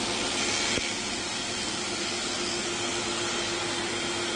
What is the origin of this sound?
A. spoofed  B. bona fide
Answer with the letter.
B